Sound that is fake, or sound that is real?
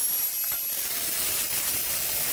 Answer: real